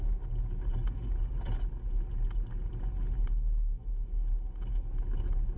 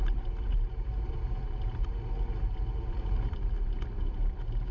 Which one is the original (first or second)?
first